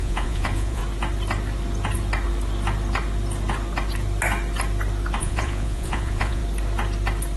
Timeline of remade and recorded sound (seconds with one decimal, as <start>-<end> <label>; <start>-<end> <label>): 0.0-0.8 remade; 0.8-5.2 recorded; 5.2-6.4 remade; 6.4-7.4 recorded